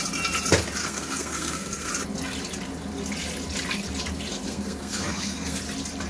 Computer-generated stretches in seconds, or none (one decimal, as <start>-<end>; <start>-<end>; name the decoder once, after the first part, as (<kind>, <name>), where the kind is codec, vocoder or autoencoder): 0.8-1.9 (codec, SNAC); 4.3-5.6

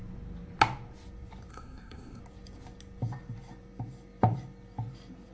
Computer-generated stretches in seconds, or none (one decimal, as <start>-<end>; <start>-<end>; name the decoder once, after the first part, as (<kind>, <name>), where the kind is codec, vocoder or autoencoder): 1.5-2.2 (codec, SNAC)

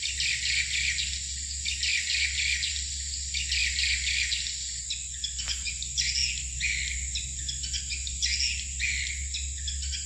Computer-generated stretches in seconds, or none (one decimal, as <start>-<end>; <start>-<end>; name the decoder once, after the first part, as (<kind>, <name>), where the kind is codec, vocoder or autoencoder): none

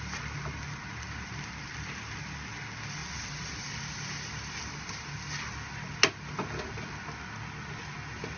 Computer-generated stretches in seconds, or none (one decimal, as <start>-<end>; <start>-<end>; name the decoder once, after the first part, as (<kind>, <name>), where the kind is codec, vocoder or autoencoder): none

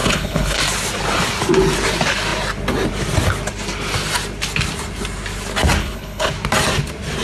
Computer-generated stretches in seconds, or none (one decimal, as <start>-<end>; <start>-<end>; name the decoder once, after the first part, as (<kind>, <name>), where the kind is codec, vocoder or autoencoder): 0.0-0.6 (codec, HILCodec); 5.8-6.3

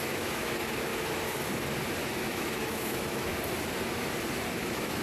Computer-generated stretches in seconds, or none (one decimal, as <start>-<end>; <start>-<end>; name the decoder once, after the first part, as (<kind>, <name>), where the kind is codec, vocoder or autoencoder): 0.0-0.9 (autoencoder, DAC-VAE); 2.0-3.3; 4.6-5.0

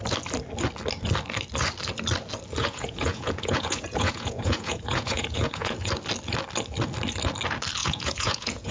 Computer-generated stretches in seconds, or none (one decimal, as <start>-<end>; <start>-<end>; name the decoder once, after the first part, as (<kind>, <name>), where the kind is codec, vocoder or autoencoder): 2.6-5.9 (vocoder, Vocos); 7.8-8.7

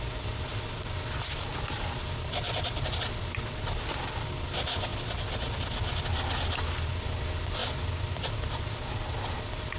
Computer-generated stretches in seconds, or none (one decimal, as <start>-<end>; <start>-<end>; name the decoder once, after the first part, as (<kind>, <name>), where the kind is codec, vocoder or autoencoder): none